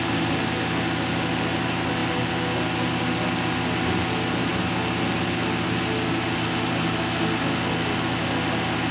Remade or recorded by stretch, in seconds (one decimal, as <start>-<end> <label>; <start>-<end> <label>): 0.0-8.9 recorded